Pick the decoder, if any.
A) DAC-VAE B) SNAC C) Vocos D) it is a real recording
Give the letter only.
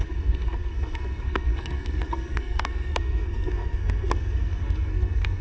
B